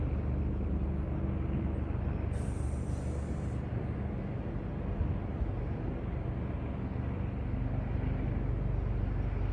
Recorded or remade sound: recorded